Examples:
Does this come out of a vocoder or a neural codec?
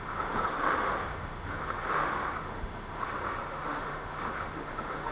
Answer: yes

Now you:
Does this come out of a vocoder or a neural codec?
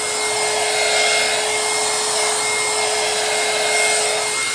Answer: no